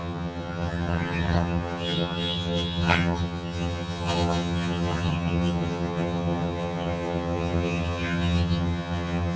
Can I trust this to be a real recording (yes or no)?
no